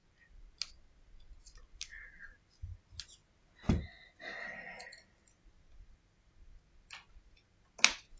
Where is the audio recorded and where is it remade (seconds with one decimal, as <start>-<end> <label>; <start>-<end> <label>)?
0.0-8.2 recorded